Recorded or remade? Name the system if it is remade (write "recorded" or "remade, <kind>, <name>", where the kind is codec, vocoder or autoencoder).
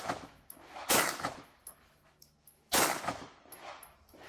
remade, autoencoder, DAC-VAE